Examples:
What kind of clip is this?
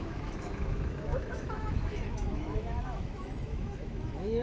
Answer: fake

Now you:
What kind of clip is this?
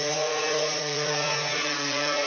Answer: fake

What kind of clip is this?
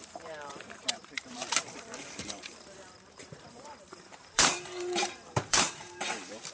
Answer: fake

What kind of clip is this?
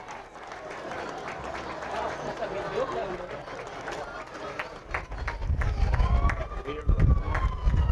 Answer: real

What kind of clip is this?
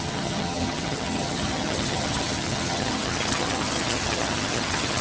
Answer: fake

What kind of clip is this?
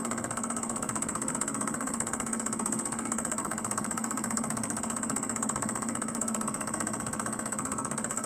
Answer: fake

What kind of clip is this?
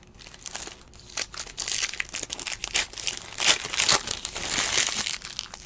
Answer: real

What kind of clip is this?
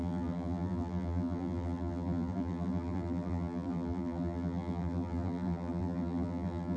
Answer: fake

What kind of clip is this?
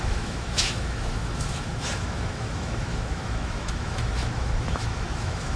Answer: fake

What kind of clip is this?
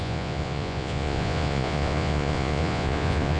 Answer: fake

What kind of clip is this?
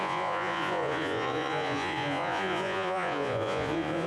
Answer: fake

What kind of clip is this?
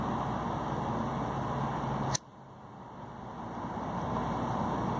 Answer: real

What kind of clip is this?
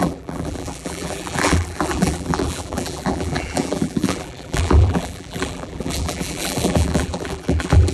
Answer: fake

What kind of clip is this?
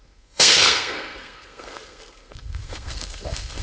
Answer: fake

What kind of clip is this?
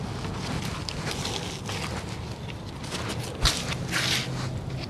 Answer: real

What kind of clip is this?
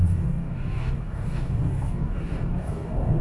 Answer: fake